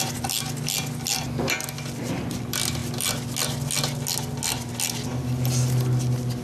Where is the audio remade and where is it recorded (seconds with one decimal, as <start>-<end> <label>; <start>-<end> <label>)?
0.0-6.4 recorded